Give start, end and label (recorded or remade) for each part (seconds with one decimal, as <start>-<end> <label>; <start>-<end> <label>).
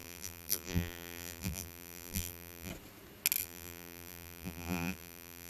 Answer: 0.0-2.7 remade; 2.7-3.4 recorded; 3.4-5.5 remade